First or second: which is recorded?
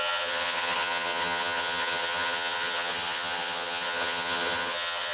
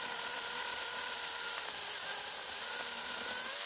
second